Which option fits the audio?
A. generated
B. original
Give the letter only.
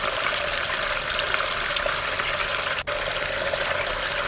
B